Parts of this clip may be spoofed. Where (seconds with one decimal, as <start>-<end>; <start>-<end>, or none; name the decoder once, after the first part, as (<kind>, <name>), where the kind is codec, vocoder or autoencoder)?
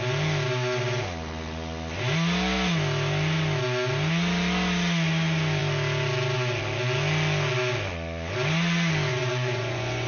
9.1-10.1 (vocoder, Vocos)